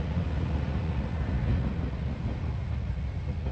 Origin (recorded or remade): remade